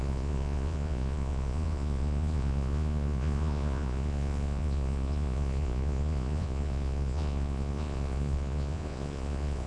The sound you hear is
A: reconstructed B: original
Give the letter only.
A